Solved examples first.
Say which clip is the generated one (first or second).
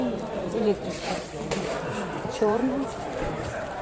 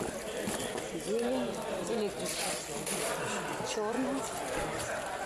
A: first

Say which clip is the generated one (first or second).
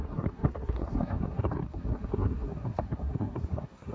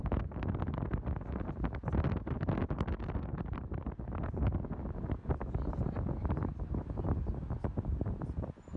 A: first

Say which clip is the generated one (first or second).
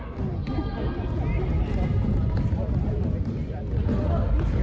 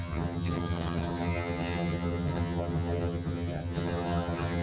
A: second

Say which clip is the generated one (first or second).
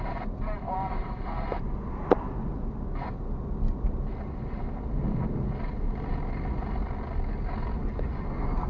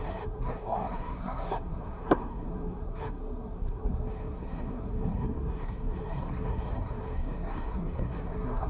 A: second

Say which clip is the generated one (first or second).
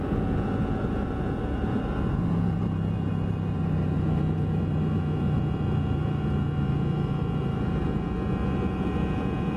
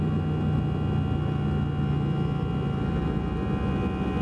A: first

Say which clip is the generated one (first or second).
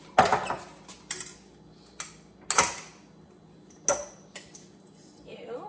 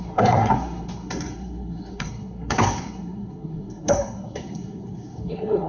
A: second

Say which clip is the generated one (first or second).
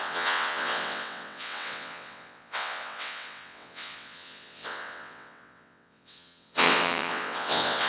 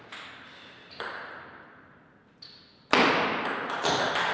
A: first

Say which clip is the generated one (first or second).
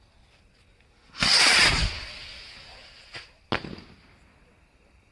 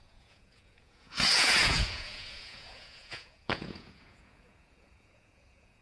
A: second